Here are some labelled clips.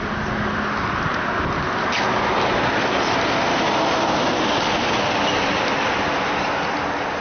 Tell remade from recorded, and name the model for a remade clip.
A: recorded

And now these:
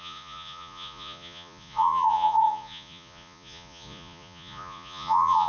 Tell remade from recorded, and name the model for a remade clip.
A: remade, vocoder, Vocos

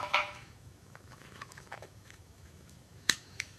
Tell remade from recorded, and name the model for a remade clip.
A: remade, autoencoder, DAC-VAE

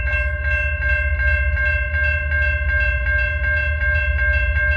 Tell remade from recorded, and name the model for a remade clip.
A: recorded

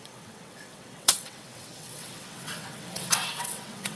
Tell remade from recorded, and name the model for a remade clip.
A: remade, vocoder, WaveNeXt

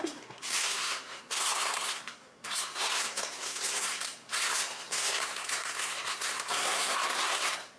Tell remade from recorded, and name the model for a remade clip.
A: remade, codec, SNAC